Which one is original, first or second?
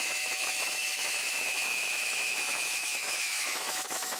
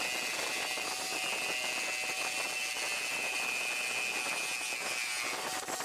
second